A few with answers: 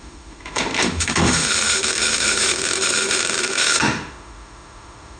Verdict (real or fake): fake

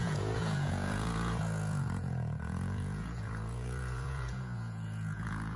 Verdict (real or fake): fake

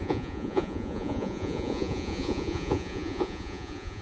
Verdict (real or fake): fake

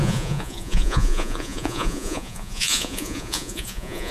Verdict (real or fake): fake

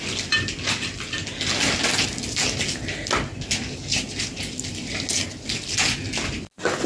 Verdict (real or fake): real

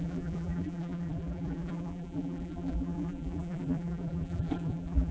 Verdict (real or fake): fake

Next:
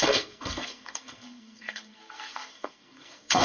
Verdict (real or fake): fake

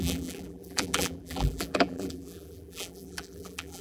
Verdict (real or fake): fake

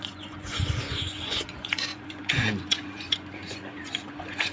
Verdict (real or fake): fake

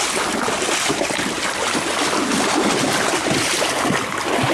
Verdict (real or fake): real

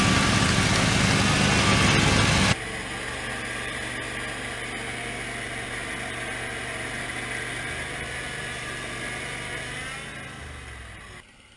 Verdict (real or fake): real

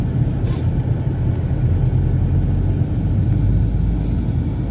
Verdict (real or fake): real